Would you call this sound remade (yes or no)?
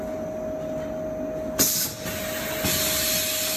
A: no